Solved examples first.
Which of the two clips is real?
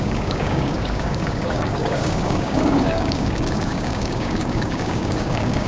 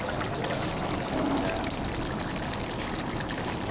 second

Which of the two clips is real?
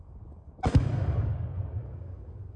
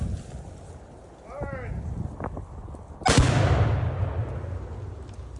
second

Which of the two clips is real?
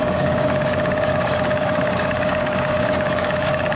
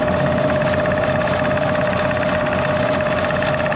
second